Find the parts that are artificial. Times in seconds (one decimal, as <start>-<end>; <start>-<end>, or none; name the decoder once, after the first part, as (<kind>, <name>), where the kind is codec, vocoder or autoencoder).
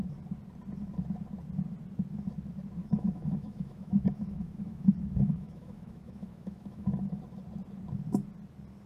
2.8-7.2 (autoencoder, DAC-VAE)